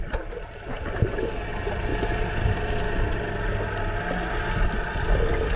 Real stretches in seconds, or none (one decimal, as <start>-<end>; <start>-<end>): 0.0-5.6